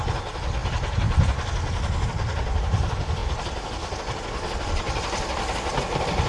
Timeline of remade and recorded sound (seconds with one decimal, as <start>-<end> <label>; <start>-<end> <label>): 0.0-6.3 recorded